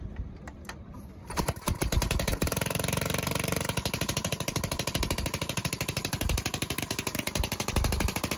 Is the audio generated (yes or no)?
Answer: yes